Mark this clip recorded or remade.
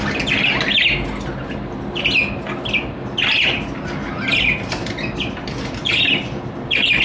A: recorded